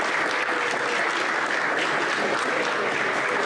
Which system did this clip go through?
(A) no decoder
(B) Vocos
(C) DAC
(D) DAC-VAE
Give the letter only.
A